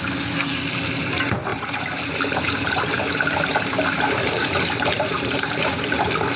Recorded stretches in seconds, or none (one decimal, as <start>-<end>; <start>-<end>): 0.0-1.5; 2.9-3.5; 5.7-6.4